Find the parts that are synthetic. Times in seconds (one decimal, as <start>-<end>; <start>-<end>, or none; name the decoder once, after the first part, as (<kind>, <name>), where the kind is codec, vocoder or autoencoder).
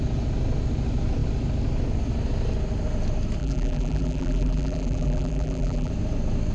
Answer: 3.4-5.9 (vocoder, BigVGAN v2)